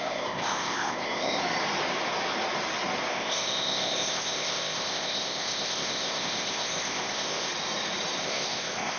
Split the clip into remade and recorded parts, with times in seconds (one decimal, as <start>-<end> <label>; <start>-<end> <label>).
0.0-1.4 remade; 1.4-3.1 recorded; 3.1-7.5 remade; 7.5-8.2 recorded; 8.2-9.0 remade